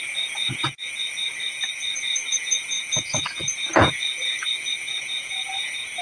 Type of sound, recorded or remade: remade